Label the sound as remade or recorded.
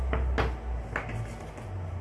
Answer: recorded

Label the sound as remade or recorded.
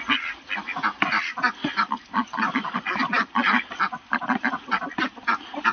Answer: recorded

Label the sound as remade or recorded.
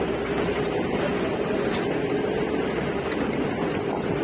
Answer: recorded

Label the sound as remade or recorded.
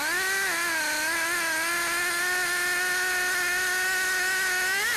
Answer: recorded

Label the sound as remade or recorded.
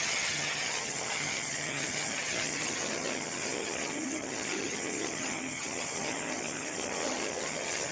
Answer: remade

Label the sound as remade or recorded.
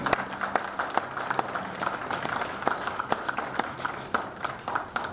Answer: recorded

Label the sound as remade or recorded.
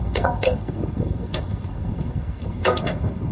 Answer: remade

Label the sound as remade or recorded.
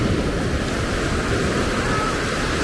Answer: recorded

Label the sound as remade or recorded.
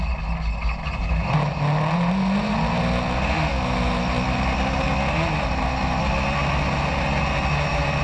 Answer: recorded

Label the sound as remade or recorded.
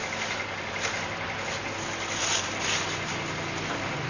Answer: recorded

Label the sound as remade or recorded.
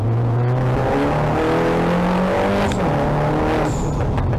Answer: recorded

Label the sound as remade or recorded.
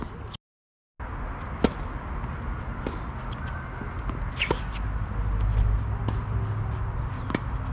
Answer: recorded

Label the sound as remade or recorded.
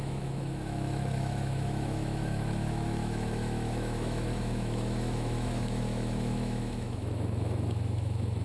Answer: remade